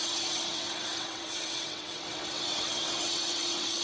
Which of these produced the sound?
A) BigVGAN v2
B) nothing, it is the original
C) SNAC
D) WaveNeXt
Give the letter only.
D